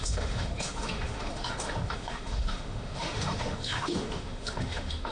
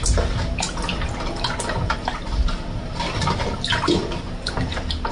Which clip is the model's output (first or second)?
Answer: first